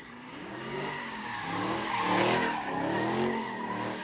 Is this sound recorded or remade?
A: remade